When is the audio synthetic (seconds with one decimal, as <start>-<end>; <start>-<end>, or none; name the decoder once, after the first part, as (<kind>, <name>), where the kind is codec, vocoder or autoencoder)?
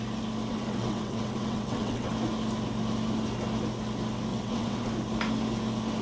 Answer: 0.5-2.1 (vocoder, WaveNeXt); 4.3-4.9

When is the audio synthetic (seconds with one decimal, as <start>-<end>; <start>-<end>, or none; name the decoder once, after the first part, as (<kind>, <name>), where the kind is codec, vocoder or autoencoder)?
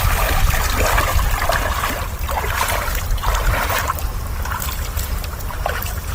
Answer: none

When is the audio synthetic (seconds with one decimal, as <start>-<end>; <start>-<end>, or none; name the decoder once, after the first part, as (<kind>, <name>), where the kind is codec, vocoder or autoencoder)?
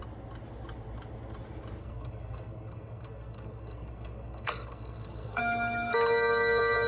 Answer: 1.8-5.4 (codec, SNAC)